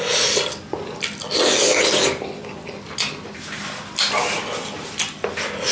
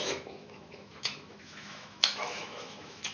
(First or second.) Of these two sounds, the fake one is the second